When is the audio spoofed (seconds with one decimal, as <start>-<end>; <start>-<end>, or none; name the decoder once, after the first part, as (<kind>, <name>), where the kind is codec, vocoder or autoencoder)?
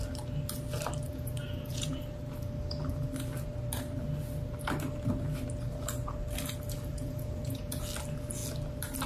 1.1-2.0 (vocoder, Vocos); 6.9-7.8